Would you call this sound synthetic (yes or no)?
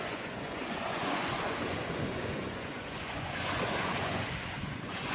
yes